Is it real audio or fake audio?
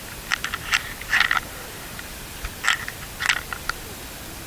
real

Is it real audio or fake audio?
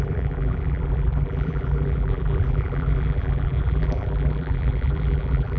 fake